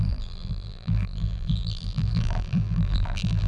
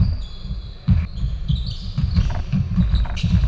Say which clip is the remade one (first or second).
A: first